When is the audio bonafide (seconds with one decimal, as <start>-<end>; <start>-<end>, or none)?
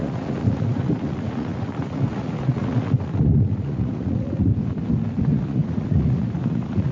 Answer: 4.5-5.2